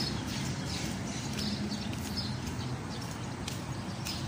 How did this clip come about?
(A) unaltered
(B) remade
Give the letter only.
A